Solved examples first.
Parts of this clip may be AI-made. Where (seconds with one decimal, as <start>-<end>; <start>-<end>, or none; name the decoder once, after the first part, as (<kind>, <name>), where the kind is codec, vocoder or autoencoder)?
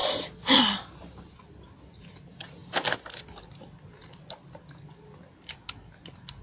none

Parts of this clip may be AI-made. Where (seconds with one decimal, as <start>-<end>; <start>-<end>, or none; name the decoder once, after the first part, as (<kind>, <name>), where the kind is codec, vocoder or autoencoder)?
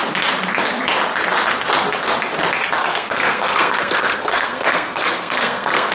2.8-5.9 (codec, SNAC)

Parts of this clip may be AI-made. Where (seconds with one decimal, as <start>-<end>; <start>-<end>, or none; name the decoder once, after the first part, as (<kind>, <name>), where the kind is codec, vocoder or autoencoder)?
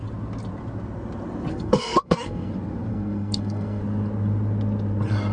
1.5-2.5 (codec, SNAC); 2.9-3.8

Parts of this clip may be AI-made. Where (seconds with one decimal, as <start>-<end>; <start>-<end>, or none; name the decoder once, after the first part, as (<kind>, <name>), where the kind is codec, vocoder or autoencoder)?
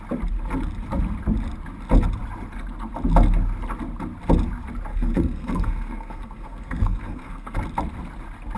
4.9-7.6 (codec, SNAC)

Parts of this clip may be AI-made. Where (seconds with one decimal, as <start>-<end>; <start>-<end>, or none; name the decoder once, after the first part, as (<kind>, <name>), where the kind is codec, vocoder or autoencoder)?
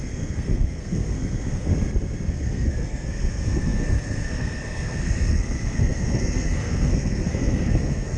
0.0-1.7 (codec, SNAC); 2.3-8.2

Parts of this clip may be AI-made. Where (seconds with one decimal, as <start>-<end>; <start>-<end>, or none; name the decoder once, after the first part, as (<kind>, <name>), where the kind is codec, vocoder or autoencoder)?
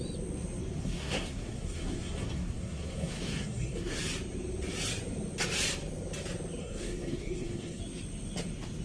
0.8-4.0 (codec, SNAC); 6.6-7.8